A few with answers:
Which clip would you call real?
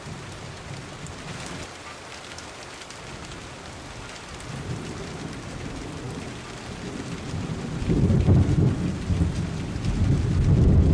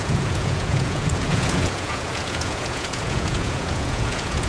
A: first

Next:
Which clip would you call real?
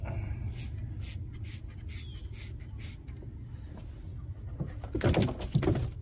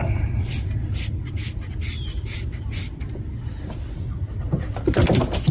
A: first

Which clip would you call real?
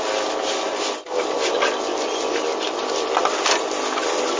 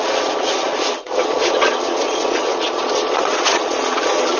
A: first